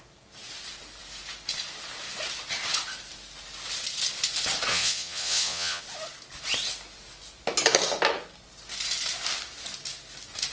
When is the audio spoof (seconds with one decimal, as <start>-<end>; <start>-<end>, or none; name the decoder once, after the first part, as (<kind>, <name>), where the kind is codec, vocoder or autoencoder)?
4.7-5.8 (vocoder, Vocos)